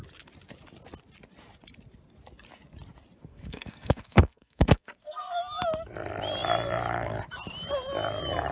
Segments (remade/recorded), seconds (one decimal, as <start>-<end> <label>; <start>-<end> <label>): 0.0-3.3 recorded; 3.3-5.4 remade; 5.4-8.5 recorded